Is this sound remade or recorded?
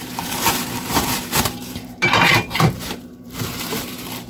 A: remade